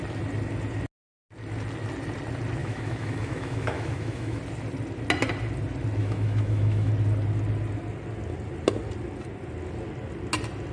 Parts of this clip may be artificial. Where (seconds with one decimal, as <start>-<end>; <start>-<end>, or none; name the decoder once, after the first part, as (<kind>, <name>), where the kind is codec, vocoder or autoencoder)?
2.6-4.4 (autoencoder, DAC-VAE); 6.0-6.9